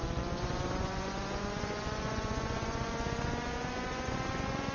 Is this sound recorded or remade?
remade